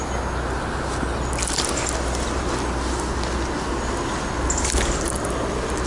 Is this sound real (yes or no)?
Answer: yes